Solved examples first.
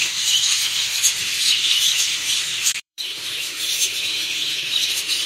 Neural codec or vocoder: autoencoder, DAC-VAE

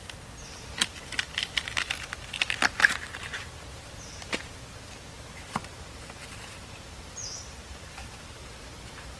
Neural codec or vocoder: vocoder, BigVGAN v2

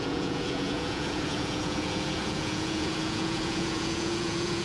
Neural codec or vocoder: vocoder, Vocos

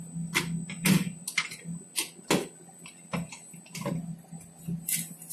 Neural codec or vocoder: none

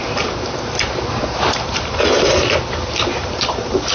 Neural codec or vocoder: vocoder, BigVGAN v2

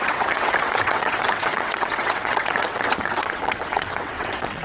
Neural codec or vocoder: vocoder, WaveNeXt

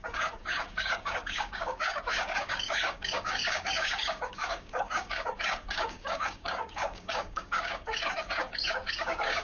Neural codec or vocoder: codec, DAC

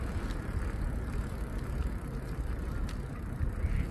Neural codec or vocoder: none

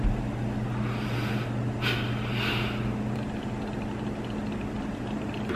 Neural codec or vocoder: none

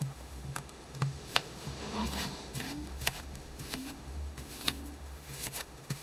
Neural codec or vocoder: autoencoder, DAC-VAE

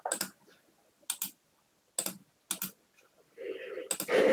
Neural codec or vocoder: none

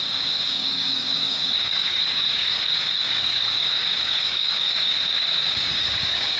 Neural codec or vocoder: codec, DAC